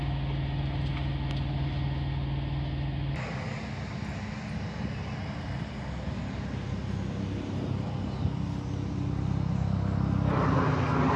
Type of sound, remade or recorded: recorded